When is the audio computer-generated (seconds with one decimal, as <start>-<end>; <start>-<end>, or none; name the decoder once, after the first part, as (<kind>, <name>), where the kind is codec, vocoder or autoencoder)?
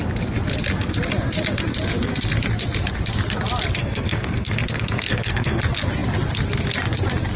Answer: 3.8-5.6 (codec, SNAC)